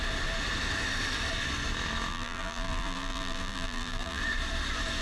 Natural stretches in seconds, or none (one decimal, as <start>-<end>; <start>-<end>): 0.0-2.1; 4.2-5.0